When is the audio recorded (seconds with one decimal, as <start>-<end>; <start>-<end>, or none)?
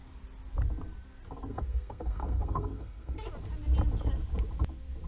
0.0-1.5; 3.3-5.1